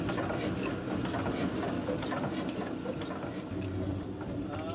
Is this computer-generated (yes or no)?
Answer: no